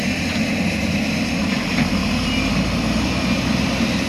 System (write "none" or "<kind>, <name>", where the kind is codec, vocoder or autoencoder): none